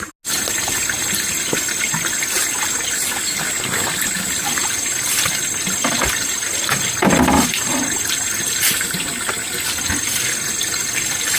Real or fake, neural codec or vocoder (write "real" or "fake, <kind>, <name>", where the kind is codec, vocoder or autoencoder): real